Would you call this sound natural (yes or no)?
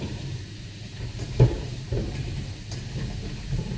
no